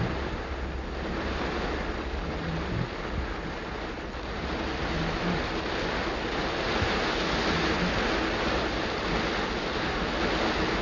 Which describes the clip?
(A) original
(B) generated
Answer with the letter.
A